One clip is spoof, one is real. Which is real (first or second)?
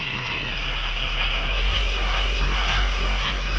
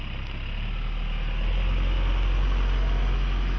second